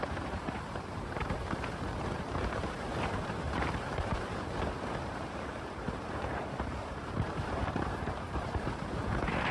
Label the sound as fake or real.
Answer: fake